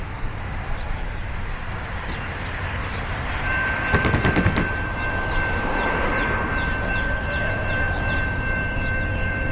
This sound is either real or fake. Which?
fake